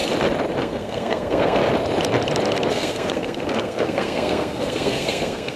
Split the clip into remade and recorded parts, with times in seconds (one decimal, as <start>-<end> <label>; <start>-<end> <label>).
0.0-0.6 recorded; 0.6-1.6 remade; 1.6-2.7 recorded; 2.7-5.6 remade